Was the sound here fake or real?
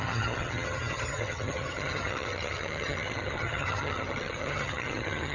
fake